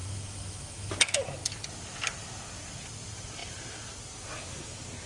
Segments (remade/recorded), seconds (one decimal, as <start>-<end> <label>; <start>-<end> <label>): 0.0-0.9 remade; 0.9-5.1 recorded